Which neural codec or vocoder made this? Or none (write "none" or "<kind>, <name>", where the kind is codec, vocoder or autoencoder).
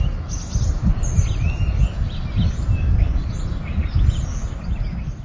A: none